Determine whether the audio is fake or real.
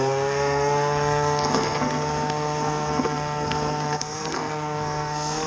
fake